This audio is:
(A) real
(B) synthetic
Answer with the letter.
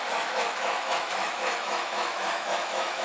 B